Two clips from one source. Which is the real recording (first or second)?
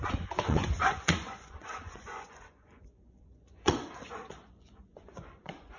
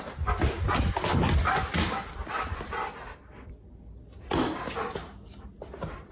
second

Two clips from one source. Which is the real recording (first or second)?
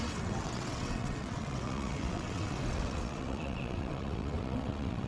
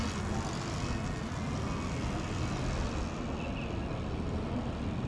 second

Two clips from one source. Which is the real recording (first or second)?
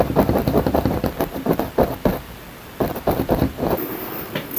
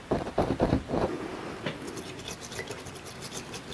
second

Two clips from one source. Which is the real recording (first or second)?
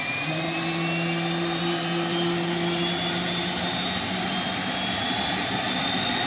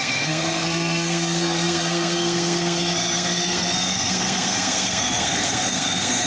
first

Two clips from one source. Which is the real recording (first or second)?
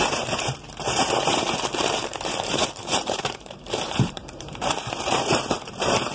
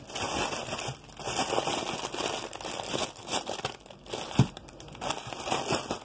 second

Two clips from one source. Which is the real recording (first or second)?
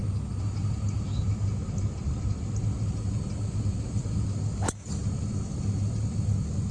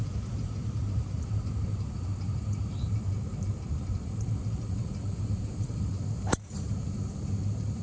first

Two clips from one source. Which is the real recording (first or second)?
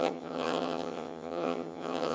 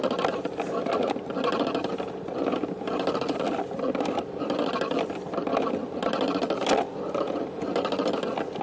second